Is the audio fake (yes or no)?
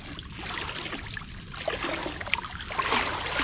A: no